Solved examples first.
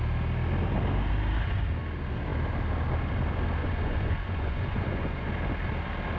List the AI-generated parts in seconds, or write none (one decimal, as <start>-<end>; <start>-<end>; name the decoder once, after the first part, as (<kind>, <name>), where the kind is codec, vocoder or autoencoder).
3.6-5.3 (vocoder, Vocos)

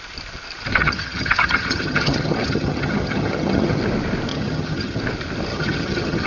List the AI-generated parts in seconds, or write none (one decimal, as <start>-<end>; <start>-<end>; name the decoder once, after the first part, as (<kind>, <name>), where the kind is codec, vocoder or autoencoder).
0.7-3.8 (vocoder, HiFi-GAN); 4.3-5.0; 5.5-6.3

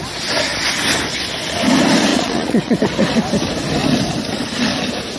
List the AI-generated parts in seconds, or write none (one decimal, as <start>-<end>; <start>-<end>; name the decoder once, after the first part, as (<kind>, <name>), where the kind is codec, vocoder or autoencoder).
2.1-2.8 (vocoder, Vocos)

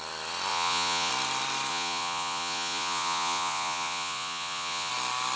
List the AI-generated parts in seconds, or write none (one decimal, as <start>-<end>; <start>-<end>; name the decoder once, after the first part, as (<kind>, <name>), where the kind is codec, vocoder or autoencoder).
0.5-1.1 (vocoder, Vocos); 1.7-4.9